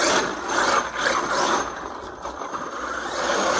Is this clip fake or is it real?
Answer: real